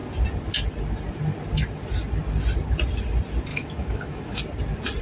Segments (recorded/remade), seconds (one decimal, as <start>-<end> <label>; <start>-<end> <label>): 0.0-3.5 recorded; 3.5-4.4 remade; 4.4-5.0 recorded